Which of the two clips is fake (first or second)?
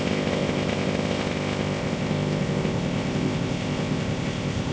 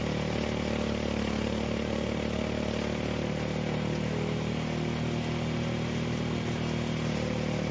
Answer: first